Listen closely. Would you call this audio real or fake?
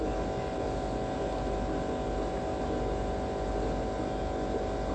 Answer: real